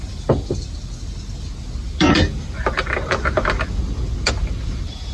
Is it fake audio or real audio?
real